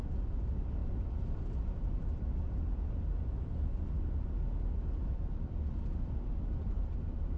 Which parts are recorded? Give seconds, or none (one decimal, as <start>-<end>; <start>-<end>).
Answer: 0.0-7.4